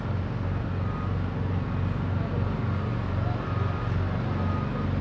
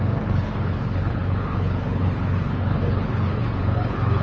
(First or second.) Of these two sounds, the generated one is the second